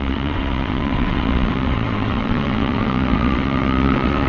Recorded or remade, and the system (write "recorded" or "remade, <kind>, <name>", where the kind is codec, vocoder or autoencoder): remade, vocoder, WaveNeXt